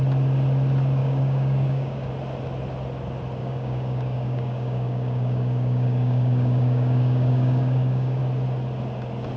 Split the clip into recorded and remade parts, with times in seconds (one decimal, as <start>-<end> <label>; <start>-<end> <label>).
0.0-1.0 recorded; 1.0-2.1 remade; 2.1-3.4 recorded; 3.4-8.2 remade; 8.2-9.4 recorded